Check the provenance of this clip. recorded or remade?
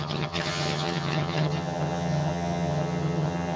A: remade